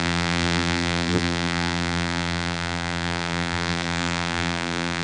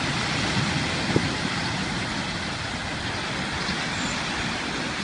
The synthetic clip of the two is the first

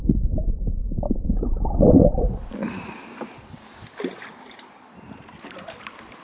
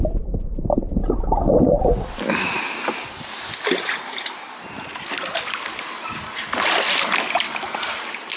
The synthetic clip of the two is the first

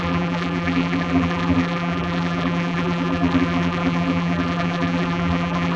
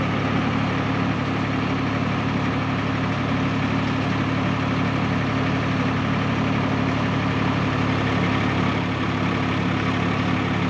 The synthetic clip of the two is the first